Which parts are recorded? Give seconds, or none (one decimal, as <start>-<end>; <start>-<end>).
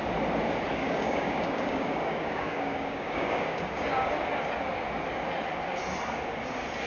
0.0-0.8; 4.1-6.9